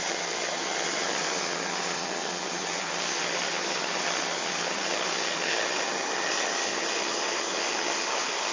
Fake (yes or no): yes